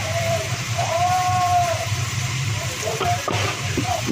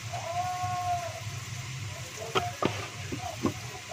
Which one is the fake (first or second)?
first